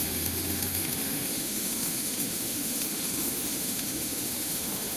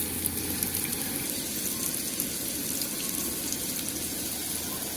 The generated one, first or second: first